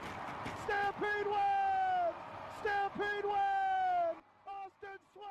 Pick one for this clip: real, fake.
real